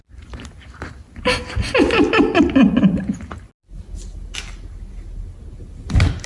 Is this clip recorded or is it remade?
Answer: recorded